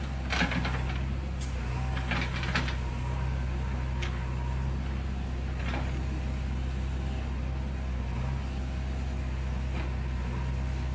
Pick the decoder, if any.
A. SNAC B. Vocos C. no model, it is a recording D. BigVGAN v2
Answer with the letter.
C